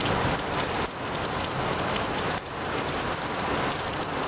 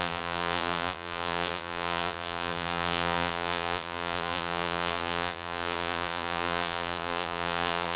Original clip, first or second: first